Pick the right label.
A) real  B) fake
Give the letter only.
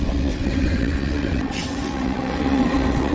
B